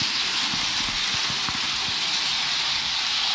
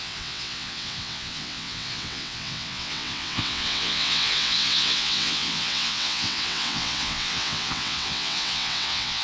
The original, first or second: first